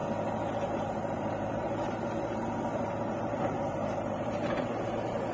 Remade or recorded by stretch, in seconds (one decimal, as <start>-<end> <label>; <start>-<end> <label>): 0.0-0.7 recorded; 0.7-5.3 remade